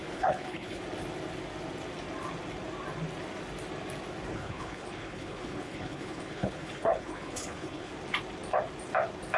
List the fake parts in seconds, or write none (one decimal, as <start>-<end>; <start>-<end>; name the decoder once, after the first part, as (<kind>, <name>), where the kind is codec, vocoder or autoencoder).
0.0-0.8 (codec, HILCodec); 4.3-7.9